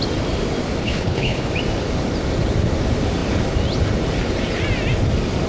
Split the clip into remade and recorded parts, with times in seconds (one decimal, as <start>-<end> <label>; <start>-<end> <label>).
0.0-0.8 recorded; 0.8-1.5 remade; 1.5-5.5 recorded